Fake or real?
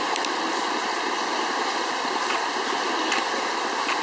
real